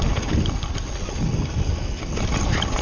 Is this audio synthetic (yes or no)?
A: no